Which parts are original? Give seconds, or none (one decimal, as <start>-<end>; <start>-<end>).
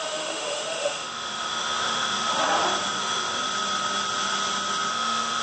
2.3-3.0; 3.4-4.9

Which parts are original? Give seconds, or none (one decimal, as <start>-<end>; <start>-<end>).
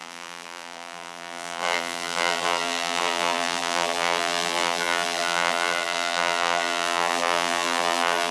none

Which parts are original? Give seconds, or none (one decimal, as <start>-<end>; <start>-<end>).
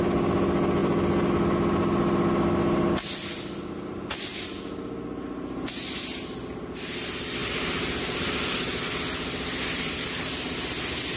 0.0-11.2